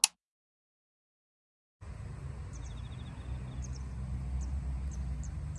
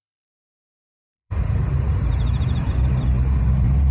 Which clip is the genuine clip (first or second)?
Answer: first